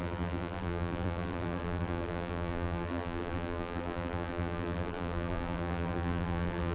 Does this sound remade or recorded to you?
remade